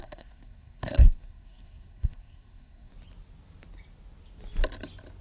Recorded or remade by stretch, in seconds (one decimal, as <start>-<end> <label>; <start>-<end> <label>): 0.0-2.9 remade; 2.9-5.2 recorded